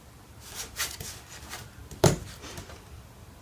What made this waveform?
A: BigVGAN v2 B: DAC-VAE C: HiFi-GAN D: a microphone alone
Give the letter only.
A